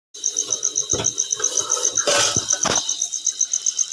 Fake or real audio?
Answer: real